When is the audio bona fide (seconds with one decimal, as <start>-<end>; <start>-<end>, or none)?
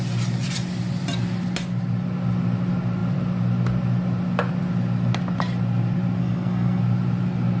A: 0.0-6.2; 6.8-7.6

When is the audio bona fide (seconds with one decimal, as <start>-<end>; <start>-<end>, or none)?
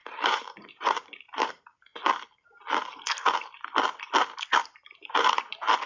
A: 1.5-5.9